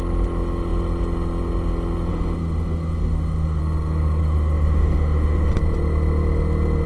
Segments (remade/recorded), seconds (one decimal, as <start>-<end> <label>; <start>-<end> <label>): 0.0-2.1 recorded; 2.1-3.6 remade; 3.6-4.2 recorded; 4.2-5.5 remade; 5.5-6.9 recorded